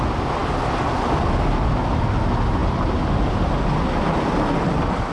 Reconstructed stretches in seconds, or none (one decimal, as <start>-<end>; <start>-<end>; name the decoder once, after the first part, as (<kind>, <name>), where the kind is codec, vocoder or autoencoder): none